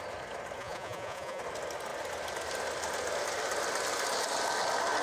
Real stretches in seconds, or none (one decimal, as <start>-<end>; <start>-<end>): 0.0-0.6; 1.4-5.0